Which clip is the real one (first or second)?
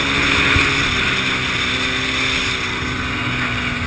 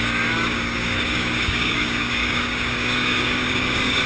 first